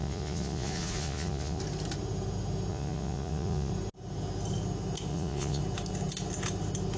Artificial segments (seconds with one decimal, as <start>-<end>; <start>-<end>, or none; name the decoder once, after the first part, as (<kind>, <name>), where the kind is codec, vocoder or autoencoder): 0.0-1.6 (vocoder, Vocos); 2.7-3.7; 5.1-5.6